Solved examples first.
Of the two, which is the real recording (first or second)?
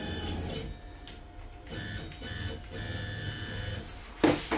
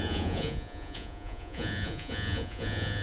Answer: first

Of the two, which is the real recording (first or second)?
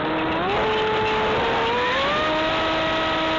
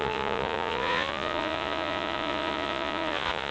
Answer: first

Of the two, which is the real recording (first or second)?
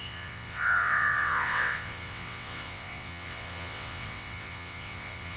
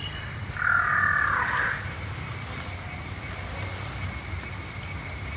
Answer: second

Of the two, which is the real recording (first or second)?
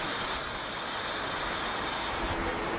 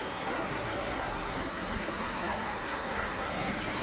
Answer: first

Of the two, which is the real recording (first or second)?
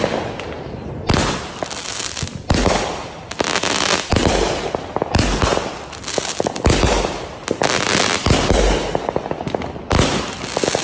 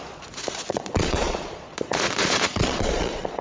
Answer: first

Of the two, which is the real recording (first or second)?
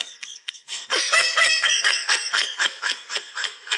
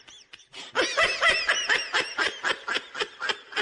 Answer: second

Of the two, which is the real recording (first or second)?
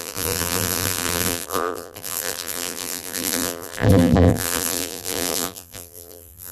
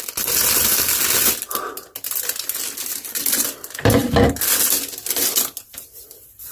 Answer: second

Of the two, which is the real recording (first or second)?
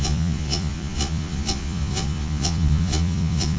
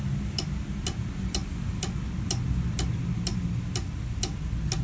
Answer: second